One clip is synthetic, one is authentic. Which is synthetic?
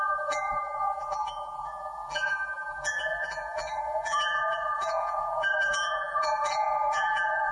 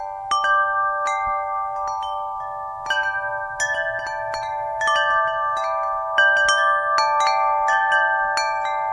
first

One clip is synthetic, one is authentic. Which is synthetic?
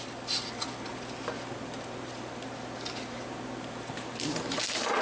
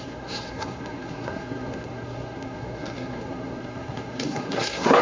second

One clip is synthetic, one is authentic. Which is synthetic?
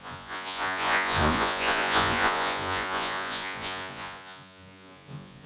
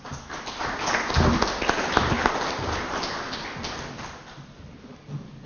first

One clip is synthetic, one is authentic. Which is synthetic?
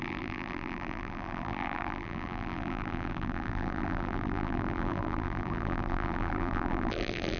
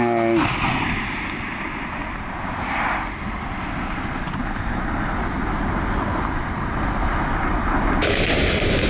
first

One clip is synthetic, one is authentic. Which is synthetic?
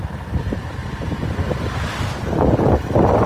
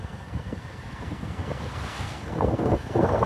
second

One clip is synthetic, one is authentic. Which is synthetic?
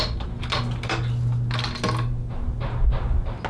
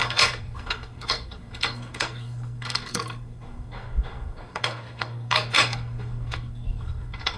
second